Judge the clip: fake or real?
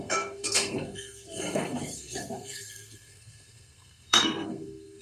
fake